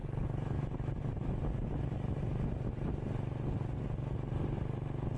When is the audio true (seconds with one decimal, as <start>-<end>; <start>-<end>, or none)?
0.0-5.2